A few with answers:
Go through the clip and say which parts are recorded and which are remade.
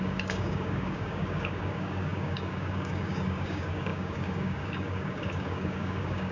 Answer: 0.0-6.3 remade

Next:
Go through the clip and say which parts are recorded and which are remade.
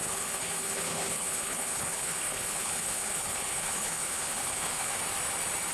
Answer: 0.0-4.9 remade; 4.9-5.7 recorded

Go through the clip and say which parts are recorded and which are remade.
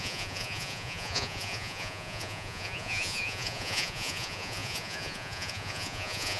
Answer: 0.0-6.4 remade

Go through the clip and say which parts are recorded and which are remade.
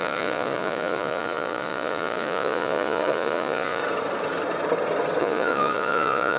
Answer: 0.0-3.8 remade; 3.8-5.2 recorded; 5.2-6.4 remade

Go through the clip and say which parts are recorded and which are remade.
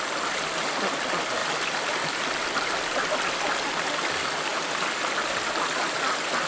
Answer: 0.0-6.5 recorded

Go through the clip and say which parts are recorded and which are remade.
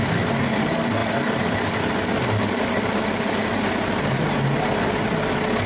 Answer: 0.0-5.7 recorded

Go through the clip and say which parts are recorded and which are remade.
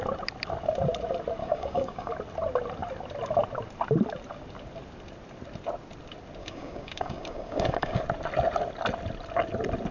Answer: 0.0-1.4 recorded; 1.4-2.1 remade; 2.1-6.4 recorded; 6.4-8.0 remade; 8.0-9.9 recorded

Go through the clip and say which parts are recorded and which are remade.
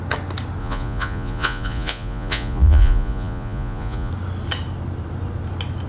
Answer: 0.0-0.6 recorded; 0.6-4.1 remade; 4.1-5.9 recorded